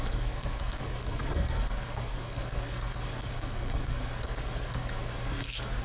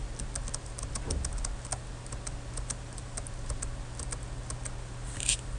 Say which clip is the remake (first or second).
first